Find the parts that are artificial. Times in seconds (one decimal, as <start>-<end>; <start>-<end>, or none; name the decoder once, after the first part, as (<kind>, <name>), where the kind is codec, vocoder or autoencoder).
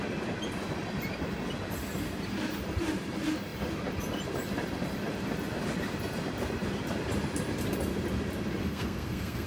8.6-9.5 (codec, SNAC)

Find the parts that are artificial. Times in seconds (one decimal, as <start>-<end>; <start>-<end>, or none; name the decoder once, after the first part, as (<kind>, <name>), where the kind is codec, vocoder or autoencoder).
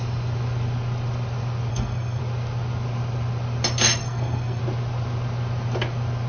1.7-2.2 (codec, SNAC); 4.0-4.6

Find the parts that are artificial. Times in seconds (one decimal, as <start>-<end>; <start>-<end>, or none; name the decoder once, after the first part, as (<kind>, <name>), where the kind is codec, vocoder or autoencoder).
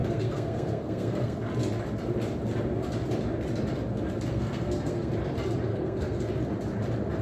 0.0-1.5 (codec, SNAC); 4.3-5.1; 5.7-6.3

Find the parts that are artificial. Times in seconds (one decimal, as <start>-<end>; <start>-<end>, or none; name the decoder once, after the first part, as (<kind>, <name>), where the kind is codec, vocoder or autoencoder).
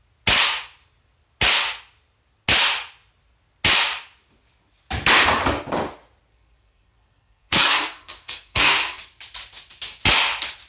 6.3-9.0 (codec, SNAC)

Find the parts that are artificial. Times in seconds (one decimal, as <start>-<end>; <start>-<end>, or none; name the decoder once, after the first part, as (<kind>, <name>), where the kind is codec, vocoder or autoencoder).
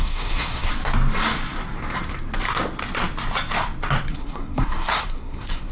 0.0-0.7 (codec, SNAC); 4.1-5.7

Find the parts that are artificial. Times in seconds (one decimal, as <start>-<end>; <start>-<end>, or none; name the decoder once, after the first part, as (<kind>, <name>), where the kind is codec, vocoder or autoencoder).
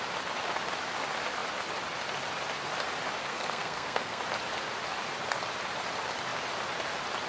3.3-4.2 (codec, SNAC)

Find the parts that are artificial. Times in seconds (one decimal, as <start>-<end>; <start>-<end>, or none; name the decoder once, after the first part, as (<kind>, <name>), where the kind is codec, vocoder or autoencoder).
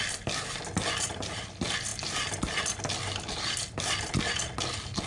none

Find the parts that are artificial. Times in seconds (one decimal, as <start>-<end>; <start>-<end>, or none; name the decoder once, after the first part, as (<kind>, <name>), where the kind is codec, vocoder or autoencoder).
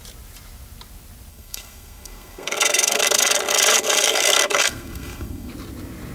1.3-3.0 (codec, SNAC); 3.7-5.5